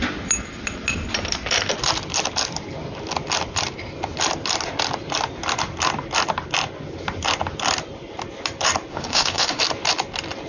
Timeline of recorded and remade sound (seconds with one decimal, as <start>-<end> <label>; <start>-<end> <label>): 0.0-8.9 recorded; 8.9-9.6 remade; 9.6-10.5 recorded